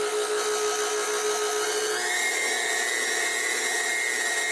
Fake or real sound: real